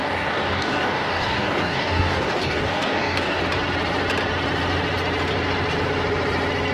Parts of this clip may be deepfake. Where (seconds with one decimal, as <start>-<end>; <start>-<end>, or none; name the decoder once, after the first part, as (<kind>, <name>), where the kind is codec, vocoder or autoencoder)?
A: 0.0-3.4 (codec, DAC)